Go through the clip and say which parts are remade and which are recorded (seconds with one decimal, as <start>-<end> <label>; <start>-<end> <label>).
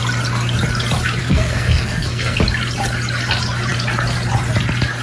0.0-1.2 recorded; 1.2-2.4 remade; 2.4-5.0 recorded